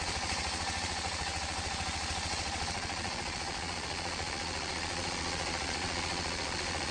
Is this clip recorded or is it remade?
remade